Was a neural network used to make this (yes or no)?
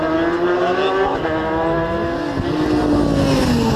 no